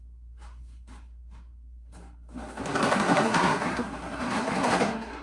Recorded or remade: remade